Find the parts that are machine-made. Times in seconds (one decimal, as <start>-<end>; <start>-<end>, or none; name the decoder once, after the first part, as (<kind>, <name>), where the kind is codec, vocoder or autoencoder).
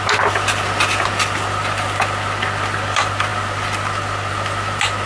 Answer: none